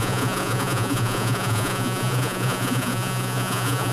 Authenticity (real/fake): fake